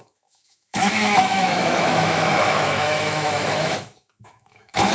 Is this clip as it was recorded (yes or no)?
no